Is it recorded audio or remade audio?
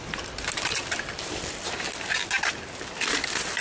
recorded